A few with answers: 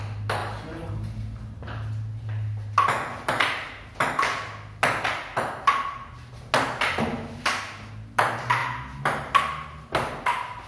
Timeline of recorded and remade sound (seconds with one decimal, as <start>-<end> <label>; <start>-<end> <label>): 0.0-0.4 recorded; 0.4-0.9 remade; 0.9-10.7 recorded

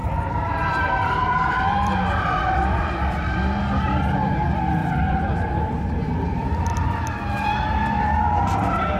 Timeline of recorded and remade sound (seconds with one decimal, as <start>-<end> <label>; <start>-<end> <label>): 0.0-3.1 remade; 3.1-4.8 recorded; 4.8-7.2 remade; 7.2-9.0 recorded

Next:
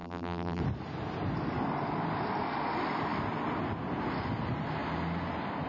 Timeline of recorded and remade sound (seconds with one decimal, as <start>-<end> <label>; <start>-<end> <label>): 0.0-0.6 remade; 0.6-5.7 recorded

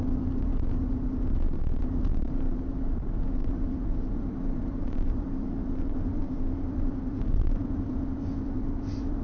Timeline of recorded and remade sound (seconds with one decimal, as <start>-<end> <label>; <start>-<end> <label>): 0.0-0.5 remade; 0.5-2.2 recorded; 2.2-9.2 remade

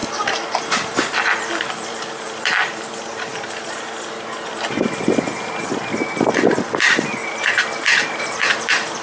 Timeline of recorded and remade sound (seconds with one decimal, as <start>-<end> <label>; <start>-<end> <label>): 0.0-0.6 recorded; 0.6-3.3 remade; 3.3-6.7 recorded; 6.7-7.2 remade; 7.2-8.1 recorded; 8.1-9.0 remade